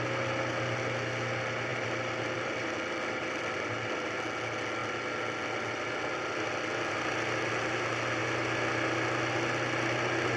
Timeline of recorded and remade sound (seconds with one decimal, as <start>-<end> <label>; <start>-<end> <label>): 0.0-1.7 recorded; 1.7-3.4 remade; 3.4-10.4 recorded